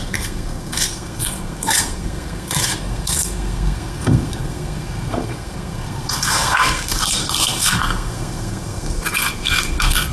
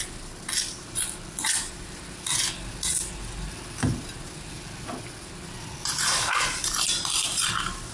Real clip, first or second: second